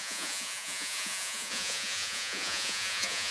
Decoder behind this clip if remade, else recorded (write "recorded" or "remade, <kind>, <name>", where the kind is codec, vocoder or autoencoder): remade, vocoder, Vocos